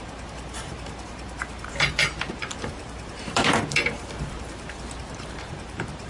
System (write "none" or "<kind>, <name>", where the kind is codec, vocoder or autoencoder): vocoder, BigVGAN v2